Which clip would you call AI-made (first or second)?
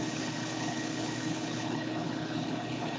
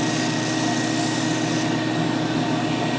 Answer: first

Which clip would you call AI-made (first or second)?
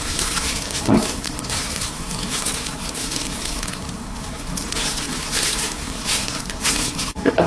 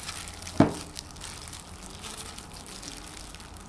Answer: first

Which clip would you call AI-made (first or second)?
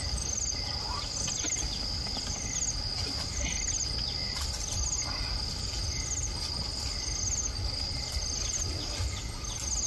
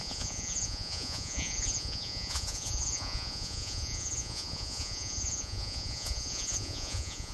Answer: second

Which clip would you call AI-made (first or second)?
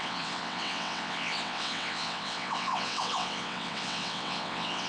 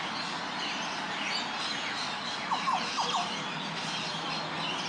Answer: first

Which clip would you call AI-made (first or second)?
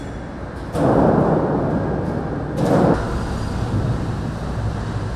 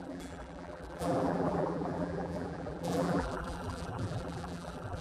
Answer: second